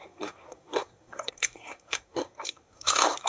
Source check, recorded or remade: remade